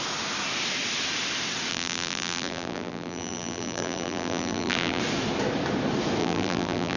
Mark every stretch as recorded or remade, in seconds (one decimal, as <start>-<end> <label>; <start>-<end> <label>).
0.0-1.7 recorded; 1.7-5.0 remade; 5.0-6.2 recorded; 6.2-7.0 remade